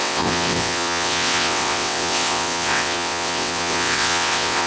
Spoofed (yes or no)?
yes